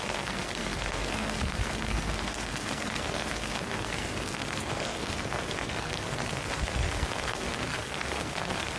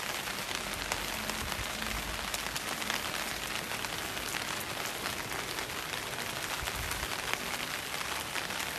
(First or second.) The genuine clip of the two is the second